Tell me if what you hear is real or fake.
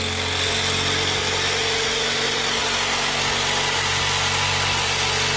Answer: real